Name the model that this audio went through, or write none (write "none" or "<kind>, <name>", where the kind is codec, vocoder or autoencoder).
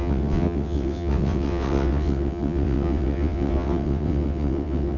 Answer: vocoder, WaveNeXt